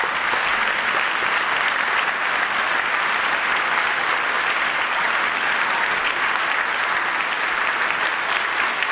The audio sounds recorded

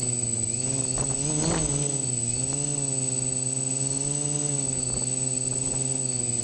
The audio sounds recorded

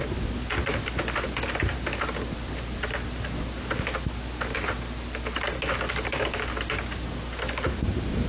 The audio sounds recorded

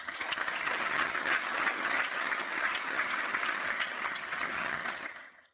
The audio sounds remade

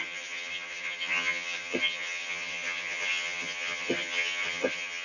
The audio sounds remade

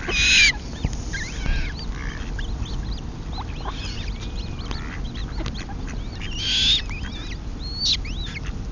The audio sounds recorded